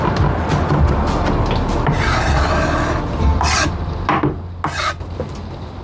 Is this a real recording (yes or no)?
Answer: yes